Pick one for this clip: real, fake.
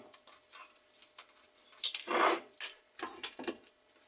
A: real